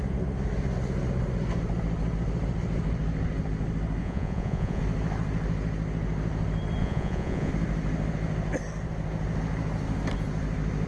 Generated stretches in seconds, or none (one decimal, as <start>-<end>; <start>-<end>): 4.0-4.8; 6.8-7.5